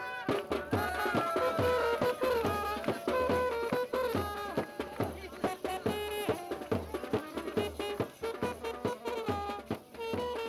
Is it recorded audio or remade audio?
recorded